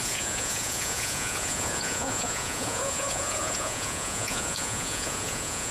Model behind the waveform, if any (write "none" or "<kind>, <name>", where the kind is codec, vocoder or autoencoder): vocoder, Vocos